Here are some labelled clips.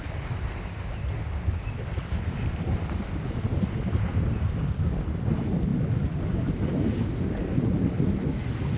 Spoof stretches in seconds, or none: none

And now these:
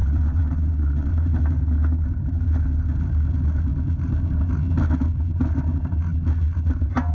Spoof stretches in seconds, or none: 0.0-1.1 (vocoder, WaveNeXt)

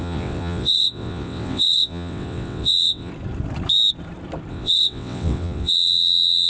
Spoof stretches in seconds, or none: 0.0-3.1 (vocoder, WaveNeXt); 4.5-6.5

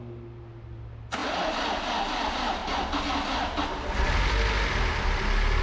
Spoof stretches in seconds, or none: 2.6-3.1 (vocoder, BigVGAN v2)

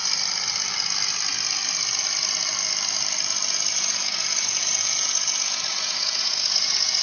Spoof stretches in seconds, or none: 3.7-7.0 (vocoder, Vocos)